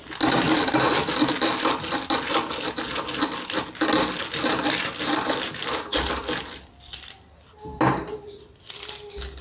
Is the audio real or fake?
real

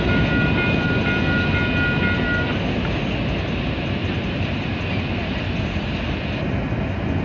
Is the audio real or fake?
real